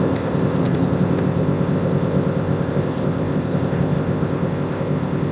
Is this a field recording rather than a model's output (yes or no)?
no